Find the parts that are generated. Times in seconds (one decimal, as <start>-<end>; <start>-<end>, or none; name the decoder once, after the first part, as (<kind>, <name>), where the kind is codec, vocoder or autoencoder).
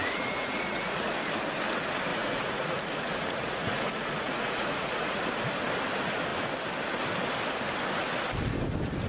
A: 0.0-1.1 (vocoder, Vocos); 2.1-5.2